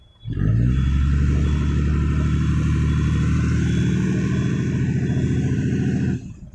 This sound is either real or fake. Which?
real